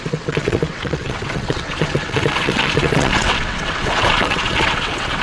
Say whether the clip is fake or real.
fake